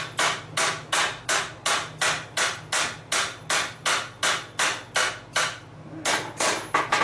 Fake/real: real